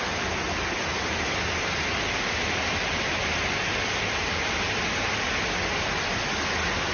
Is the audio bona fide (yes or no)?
yes